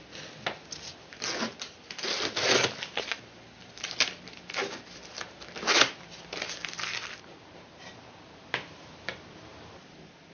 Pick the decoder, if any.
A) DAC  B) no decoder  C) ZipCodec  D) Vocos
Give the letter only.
B